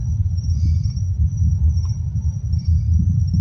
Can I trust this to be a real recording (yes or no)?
yes